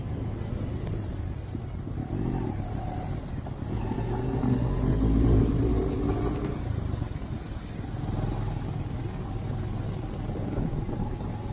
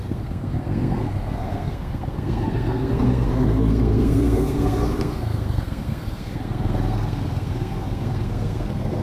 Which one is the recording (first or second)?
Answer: first